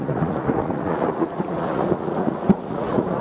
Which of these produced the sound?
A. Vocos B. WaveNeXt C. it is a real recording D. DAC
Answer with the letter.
A